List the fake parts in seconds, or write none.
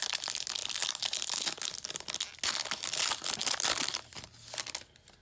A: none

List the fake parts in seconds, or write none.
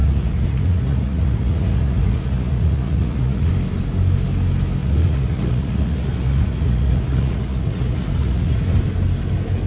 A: 0.0-3.5 (vocoder, Vocos); 4.8-8.6